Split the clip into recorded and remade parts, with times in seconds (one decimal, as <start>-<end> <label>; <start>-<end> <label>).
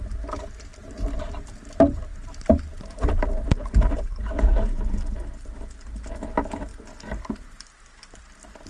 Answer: 0.0-0.7 recorded; 0.7-1.3 remade; 1.3-2.1 recorded; 2.1-4.8 remade; 4.8-8.7 recorded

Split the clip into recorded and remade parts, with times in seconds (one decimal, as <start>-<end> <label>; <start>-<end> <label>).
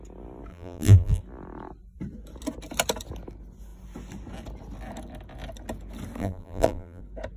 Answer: 0.0-0.5 recorded; 0.5-1.2 remade; 1.2-6.2 recorded; 6.2-7.0 remade; 7.0-7.4 recorded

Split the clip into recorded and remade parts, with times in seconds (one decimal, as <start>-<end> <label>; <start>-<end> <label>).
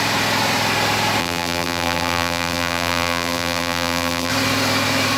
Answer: 0.0-1.2 recorded; 1.2-4.3 remade; 4.3-5.2 recorded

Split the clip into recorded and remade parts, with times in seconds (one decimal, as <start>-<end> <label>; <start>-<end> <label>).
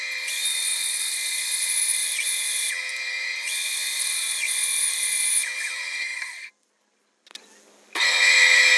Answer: 0.0-0.7 recorded; 0.7-1.5 remade; 1.5-8.8 recorded